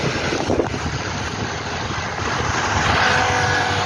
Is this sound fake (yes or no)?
no